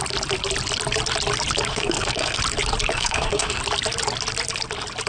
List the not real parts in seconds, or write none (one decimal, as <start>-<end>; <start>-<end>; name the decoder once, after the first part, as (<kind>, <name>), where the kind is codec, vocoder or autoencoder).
1.7-2.4 (codec, SNAC); 2.9-3.6

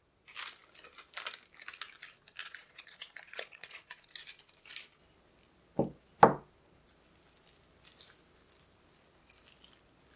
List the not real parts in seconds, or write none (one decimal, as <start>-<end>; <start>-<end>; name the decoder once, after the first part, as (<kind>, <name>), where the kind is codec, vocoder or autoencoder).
2.4-4.1 (vocoder, Vocos)